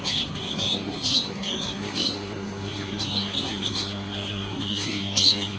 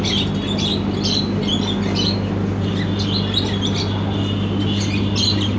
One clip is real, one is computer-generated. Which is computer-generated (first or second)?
first